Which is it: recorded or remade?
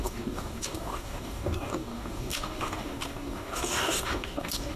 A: remade